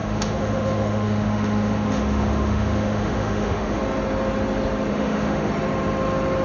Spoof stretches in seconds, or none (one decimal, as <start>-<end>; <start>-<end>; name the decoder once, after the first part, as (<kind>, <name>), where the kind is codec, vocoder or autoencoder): 0.0-3.8 (autoencoder, DAC-VAE); 4.9-5.5